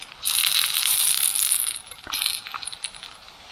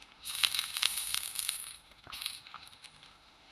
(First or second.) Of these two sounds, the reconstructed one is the second